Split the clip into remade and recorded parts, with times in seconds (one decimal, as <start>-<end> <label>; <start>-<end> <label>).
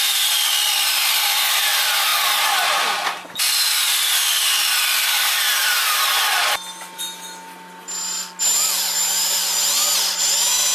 0.0-10.7 recorded